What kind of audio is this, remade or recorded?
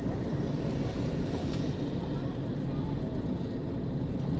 recorded